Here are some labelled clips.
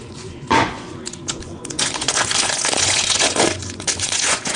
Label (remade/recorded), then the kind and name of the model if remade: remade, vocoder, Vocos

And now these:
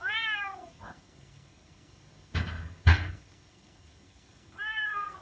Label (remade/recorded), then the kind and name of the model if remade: remade, codec, SNAC